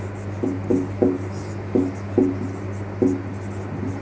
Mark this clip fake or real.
real